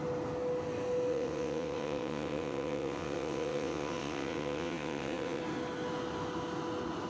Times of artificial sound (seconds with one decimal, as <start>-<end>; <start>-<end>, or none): 1.1-5.4